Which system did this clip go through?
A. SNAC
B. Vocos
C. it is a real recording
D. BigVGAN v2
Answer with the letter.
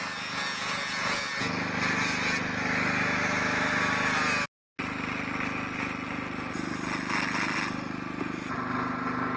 C